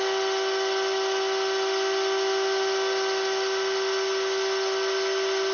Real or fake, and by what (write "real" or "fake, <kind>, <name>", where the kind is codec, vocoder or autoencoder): real